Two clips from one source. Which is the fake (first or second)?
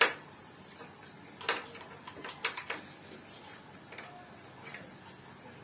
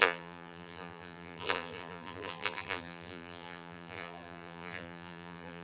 second